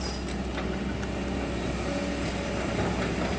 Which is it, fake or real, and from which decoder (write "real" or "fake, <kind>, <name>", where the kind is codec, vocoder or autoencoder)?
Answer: real